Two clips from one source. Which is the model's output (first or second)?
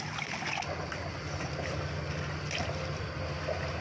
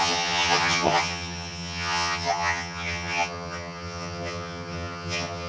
second